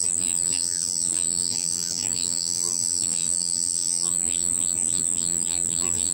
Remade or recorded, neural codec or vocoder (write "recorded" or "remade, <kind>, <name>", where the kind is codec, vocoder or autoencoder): remade, vocoder, BigVGAN v2